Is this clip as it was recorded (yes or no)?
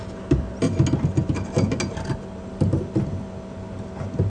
yes